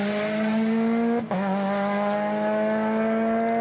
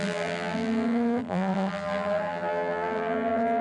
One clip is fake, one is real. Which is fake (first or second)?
second